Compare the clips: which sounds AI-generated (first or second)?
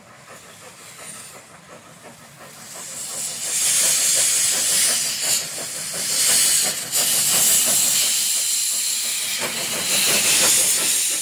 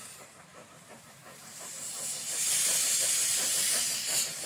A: second